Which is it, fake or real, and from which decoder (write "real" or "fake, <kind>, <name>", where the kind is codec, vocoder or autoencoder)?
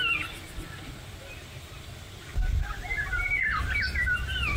real